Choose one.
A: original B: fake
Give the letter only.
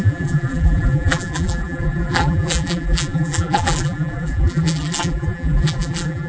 B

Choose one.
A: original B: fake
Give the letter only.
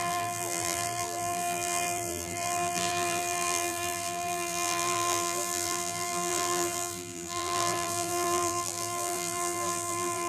B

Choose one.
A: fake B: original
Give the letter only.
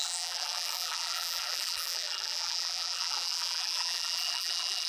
A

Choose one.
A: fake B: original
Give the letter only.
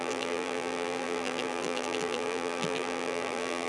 A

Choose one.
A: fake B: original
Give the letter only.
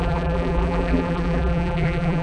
A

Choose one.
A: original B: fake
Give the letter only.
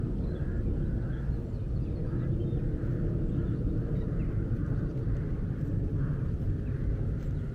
A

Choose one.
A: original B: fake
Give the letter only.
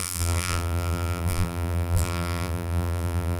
B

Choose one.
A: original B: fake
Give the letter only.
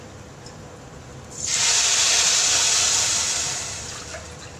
A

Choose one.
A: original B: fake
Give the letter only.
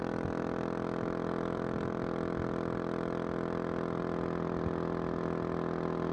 A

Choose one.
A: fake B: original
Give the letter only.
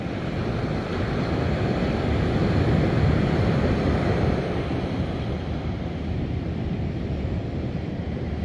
A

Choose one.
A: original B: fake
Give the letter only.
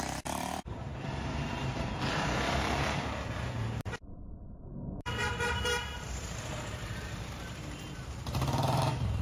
B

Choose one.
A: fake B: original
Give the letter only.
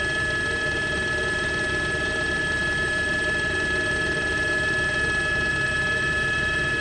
A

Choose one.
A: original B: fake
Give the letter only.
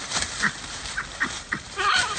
A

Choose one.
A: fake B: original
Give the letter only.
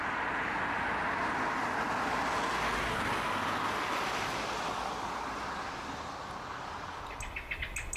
B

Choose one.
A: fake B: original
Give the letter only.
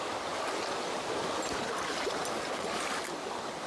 B